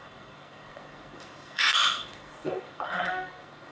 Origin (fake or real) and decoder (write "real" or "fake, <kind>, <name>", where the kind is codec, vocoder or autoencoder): fake, codec, SNAC